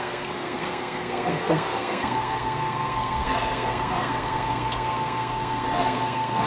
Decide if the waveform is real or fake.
fake